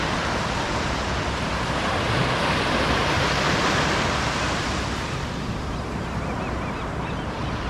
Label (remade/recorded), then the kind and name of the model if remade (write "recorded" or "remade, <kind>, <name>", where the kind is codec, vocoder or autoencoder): recorded